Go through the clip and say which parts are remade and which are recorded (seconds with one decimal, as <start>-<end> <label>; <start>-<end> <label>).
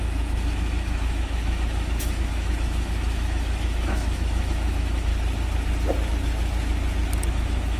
0.0-5.1 remade; 5.1-7.3 recorded; 7.3-7.8 remade